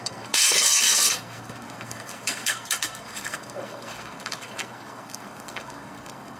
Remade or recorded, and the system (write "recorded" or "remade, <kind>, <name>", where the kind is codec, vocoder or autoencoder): remade, codec, SNAC